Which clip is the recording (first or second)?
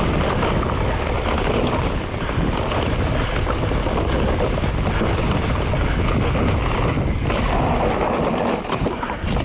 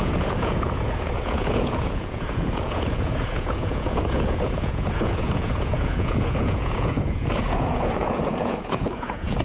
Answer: first